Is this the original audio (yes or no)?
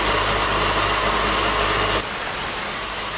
yes